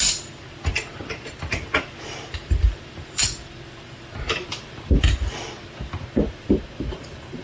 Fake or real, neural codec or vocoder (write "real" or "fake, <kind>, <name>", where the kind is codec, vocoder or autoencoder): fake, vocoder, BigVGAN v2